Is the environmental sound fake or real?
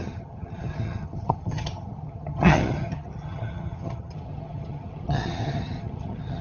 fake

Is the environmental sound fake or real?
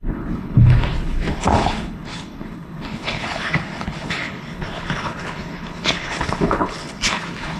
fake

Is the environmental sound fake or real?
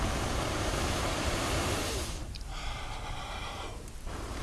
fake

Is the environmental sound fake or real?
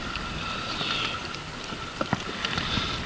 real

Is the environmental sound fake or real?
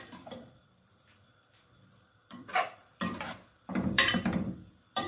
fake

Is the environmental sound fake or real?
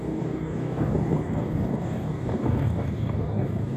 fake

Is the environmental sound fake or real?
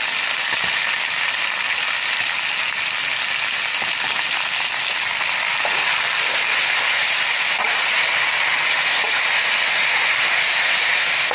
real